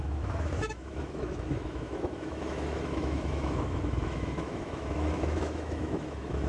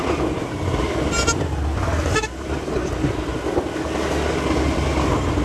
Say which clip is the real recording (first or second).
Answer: second